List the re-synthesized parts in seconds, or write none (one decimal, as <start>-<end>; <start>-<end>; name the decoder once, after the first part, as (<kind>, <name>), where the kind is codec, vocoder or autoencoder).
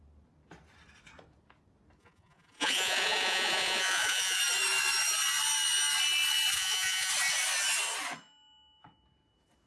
2.0-4.4 (vocoder, Vocos); 6.5-7.1